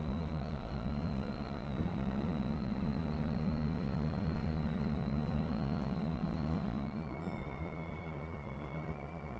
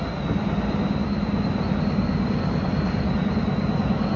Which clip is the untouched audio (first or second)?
second